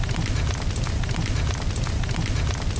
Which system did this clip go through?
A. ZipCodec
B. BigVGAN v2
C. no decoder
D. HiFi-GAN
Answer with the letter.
C